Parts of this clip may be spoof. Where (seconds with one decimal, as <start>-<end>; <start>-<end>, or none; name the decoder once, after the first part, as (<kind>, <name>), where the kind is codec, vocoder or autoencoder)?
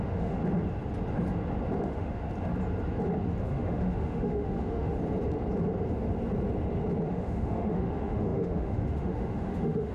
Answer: 0.0-0.4 (autoencoder, DAC-VAE); 1.8-2.2; 3.4-5.0; 7.1-9.9